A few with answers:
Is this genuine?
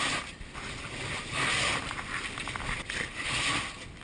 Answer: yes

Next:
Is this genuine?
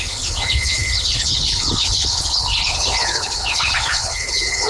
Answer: no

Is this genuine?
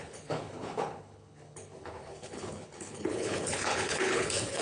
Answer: no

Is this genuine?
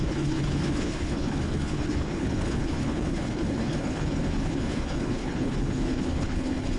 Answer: no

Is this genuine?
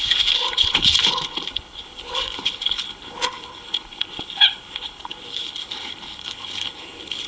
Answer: no